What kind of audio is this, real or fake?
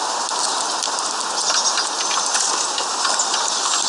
real